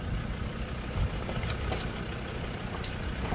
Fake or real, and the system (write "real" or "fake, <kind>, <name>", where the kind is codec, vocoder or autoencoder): real